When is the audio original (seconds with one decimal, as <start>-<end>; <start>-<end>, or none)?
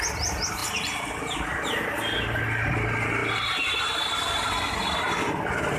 0.6-1.2; 3.2-4.5